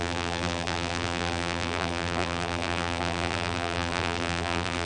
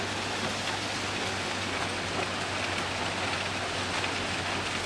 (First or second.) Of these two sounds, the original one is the second